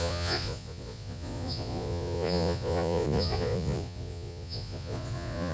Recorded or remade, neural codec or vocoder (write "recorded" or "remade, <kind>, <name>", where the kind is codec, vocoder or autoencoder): remade, vocoder, Vocos